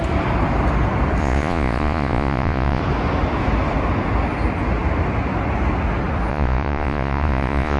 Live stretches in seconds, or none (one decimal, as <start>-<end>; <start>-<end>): 0.0-1.2; 2.8-6.3